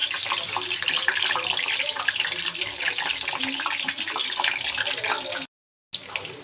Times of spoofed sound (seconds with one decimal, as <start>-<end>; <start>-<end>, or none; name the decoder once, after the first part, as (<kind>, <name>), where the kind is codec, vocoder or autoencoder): none